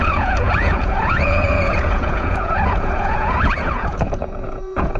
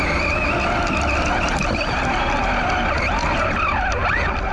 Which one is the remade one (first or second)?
first